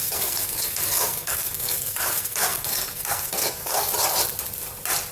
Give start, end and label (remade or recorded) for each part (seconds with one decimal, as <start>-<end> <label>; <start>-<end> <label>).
0.0-3.9 remade; 3.9-5.1 recorded